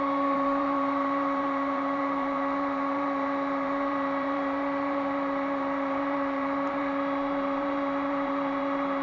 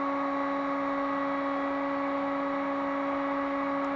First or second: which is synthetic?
first